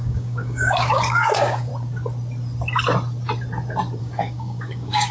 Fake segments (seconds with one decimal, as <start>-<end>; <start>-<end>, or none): 0.0-1.7; 4.0-5.1